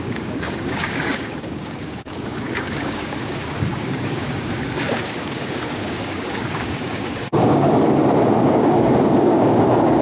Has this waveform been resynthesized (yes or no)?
yes